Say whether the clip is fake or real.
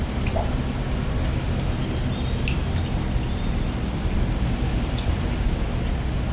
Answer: real